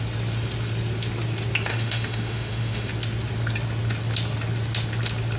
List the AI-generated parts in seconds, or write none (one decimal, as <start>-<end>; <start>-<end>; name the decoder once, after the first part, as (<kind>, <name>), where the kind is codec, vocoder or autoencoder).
1.7-2.9 (autoencoder, DAC-VAE)